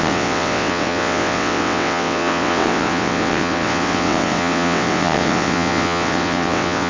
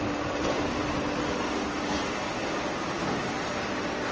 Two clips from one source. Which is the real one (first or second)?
second